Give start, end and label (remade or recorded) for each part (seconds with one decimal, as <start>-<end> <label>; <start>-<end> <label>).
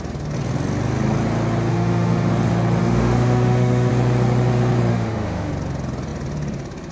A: 0.0-1.7 recorded; 1.7-2.3 remade; 2.3-2.8 recorded; 2.8-3.9 remade; 3.9-4.9 recorded; 4.9-5.5 remade; 5.5-6.9 recorded